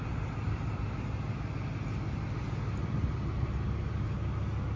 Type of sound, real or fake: real